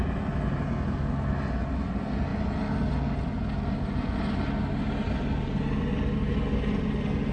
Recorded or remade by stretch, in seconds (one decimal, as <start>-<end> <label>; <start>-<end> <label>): 0.0-7.3 recorded